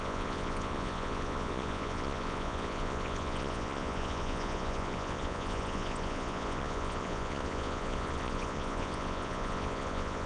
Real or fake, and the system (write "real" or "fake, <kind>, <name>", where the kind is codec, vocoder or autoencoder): fake, vocoder, Vocos